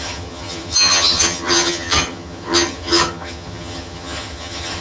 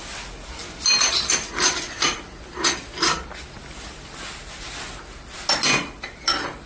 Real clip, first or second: second